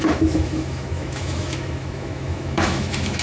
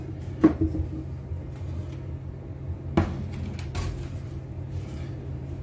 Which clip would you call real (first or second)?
second